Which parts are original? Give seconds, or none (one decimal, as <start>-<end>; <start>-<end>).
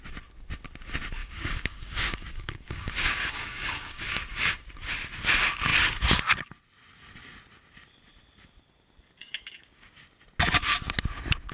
0.0-1.2; 4.6-9.2; 10.0-11.5